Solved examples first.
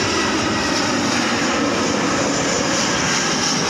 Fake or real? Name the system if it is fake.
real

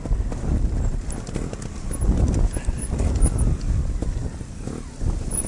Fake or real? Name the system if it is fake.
real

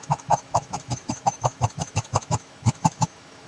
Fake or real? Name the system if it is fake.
fake, autoencoder, DAC-VAE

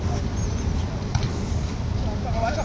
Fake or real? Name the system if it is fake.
real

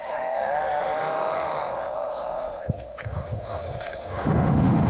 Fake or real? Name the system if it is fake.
fake, autoencoder, DAC-VAE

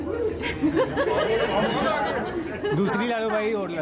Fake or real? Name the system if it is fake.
real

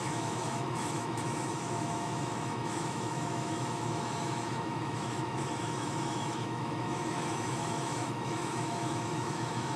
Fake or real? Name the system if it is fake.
fake, autoencoder, DAC-VAE